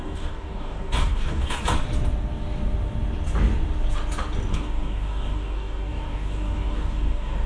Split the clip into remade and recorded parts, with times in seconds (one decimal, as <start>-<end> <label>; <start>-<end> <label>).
0.0-1.6 remade; 1.6-4.5 recorded; 4.5-7.5 remade